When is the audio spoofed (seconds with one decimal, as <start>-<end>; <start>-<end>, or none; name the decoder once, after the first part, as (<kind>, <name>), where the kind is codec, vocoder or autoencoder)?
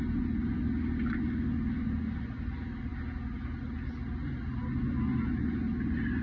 none